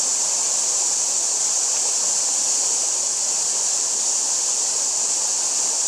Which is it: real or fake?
real